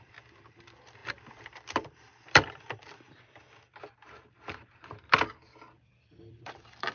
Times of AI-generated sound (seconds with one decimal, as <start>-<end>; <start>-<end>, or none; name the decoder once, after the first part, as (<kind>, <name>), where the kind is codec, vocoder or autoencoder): 0.0-6.9 (vocoder, BigVGAN v2)